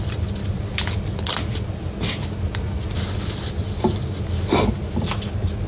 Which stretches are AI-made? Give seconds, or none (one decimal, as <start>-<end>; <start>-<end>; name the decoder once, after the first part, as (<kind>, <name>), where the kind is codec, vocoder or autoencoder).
0.4-2.8 (vocoder, BigVGAN v2)